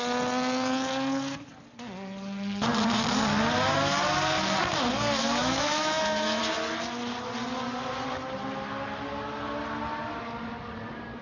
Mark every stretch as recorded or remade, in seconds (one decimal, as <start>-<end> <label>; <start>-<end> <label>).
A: 0.0-5.4 recorded; 5.4-6.4 remade; 6.4-11.2 recorded